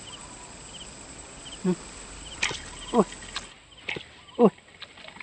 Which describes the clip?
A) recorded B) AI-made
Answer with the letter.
A